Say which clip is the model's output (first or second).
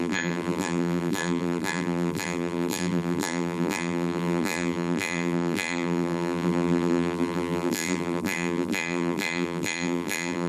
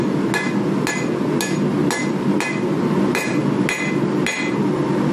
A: first